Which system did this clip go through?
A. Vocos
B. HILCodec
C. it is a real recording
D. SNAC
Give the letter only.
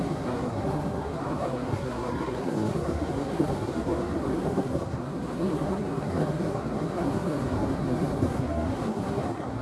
D